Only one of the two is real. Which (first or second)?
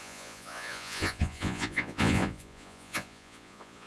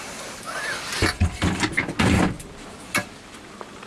second